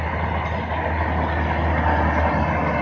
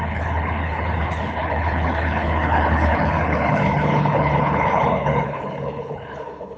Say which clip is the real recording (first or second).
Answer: first